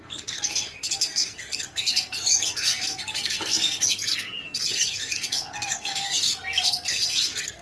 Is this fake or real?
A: fake